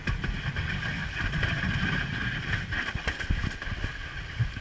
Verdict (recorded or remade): recorded